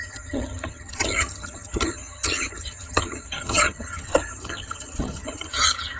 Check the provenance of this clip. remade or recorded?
remade